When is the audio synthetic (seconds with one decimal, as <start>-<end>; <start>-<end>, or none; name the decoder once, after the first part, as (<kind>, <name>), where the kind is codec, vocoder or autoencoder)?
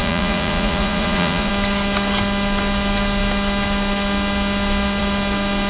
0.0-1.5 (vocoder, Vocos)